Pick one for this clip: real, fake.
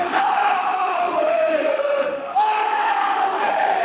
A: fake